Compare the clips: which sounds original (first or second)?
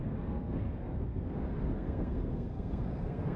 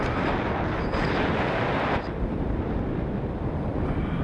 second